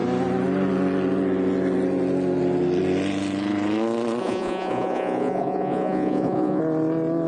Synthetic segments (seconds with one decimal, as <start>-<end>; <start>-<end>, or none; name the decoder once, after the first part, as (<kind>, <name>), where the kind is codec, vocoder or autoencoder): 4.2-6.6 (vocoder, Vocos)